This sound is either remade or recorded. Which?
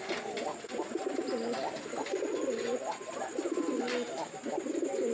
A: recorded